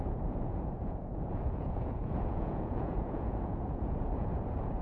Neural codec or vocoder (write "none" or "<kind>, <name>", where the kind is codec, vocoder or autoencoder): vocoder, Vocos